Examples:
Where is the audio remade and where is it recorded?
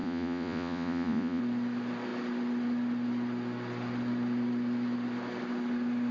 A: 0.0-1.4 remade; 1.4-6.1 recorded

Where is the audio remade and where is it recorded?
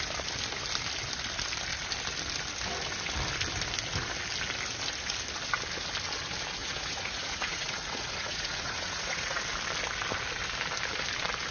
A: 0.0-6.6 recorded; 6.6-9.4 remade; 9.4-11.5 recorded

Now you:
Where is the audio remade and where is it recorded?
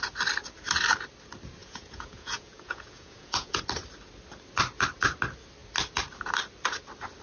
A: 0.0-1.6 recorded; 1.6-3.6 remade; 3.6-7.2 recorded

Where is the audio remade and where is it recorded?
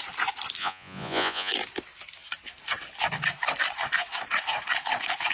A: 0.0-0.6 recorded; 0.6-1.5 remade; 1.5-5.3 recorded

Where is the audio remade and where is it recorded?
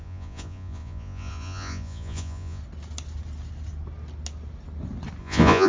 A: 0.0-2.6 remade; 2.6-5.2 recorded; 5.2-5.7 remade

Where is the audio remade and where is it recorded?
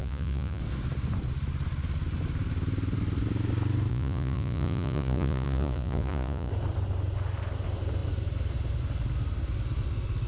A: 0.0-0.6 remade; 0.6-3.9 recorded; 3.9-6.5 remade; 6.5-10.3 recorded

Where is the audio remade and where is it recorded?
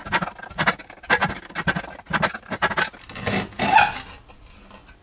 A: 0.0-5.0 recorded